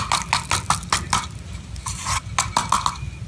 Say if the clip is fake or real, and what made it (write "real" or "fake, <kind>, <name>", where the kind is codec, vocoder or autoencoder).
real